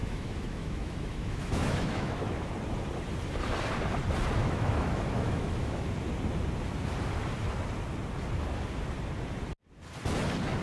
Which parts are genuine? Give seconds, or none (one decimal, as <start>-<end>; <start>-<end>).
2.5-4.4; 5.9-10.6